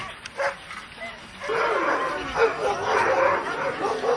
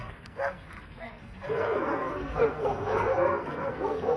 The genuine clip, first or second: first